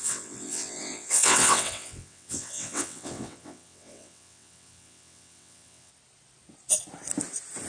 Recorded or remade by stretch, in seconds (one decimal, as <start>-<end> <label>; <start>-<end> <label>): 0.0-5.9 remade; 5.9-7.7 recorded